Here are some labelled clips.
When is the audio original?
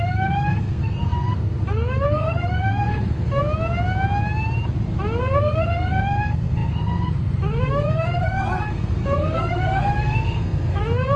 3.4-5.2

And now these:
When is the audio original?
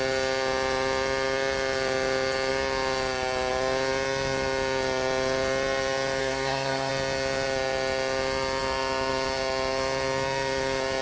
0.0-6.2; 6.9-11.0